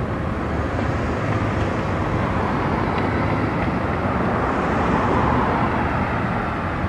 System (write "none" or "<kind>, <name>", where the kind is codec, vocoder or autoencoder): none